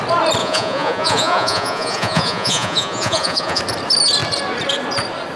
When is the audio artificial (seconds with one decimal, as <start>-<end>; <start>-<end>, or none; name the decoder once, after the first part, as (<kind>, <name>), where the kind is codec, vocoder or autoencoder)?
0.4-3.6 (vocoder, Vocos)